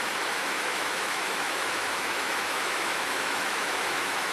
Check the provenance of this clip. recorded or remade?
remade